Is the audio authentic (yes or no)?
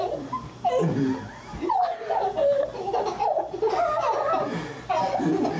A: yes